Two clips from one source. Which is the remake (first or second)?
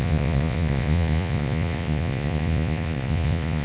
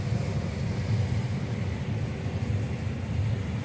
first